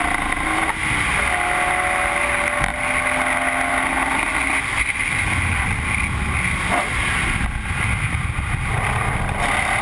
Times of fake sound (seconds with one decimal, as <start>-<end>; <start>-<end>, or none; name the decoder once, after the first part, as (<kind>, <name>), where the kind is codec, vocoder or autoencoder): none